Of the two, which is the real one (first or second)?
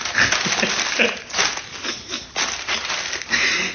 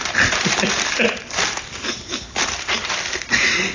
first